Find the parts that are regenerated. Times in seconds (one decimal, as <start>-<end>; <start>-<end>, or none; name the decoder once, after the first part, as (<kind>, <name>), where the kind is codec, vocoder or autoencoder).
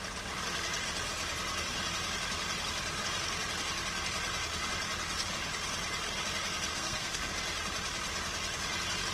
6.7-7.3 (codec, SNAC)